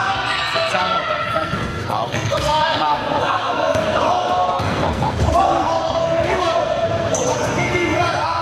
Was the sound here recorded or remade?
remade